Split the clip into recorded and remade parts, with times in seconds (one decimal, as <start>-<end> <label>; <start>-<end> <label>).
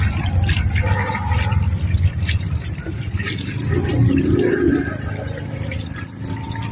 0.0-6.7 recorded